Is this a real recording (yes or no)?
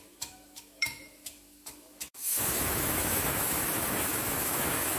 no